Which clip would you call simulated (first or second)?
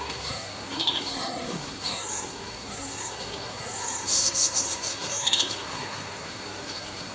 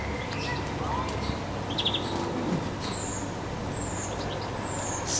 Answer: first